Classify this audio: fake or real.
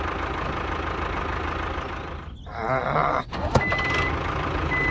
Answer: real